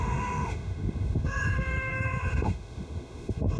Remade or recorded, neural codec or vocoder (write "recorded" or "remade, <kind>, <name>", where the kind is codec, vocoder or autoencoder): remade, autoencoder, DAC-VAE